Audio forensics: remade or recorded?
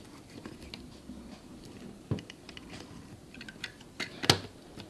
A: recorded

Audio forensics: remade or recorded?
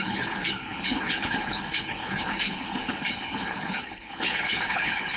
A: remade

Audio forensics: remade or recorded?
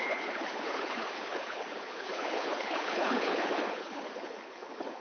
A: remade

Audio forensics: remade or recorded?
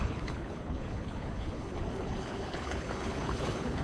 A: remade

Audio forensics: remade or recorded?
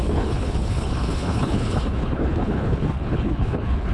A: remade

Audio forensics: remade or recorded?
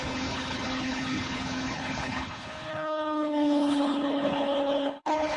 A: remade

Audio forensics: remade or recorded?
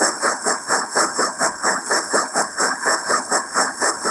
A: remade